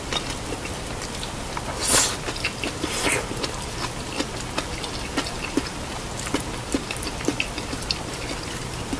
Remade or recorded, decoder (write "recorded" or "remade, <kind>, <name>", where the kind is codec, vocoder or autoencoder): recorded